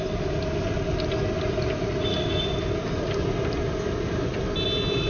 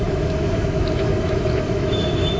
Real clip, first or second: first